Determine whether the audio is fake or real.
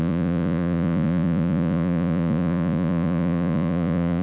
fake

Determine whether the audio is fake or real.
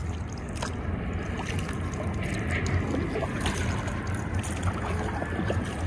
real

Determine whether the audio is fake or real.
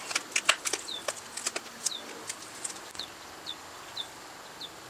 real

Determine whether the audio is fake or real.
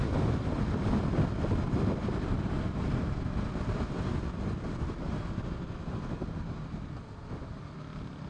real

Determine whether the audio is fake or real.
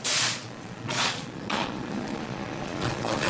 fake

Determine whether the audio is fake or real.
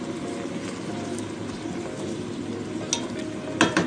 real